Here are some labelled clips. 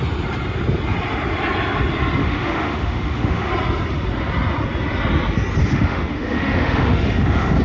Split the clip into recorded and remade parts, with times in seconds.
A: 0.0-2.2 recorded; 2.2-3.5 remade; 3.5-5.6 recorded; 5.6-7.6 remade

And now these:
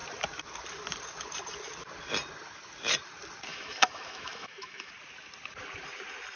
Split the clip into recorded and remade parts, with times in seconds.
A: 0.0-3.5 recorded; 3.5-4.9 remade; 4.9-6.4 recorded